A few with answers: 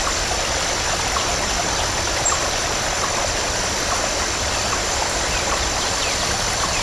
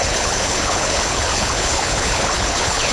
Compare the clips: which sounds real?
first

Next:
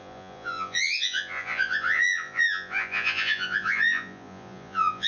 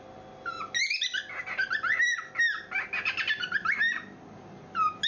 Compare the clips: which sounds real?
second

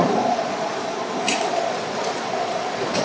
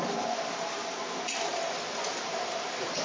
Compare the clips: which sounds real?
second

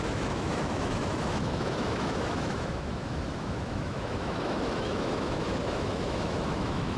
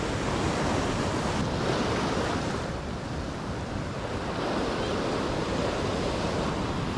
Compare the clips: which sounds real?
second